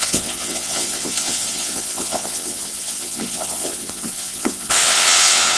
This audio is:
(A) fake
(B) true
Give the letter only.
A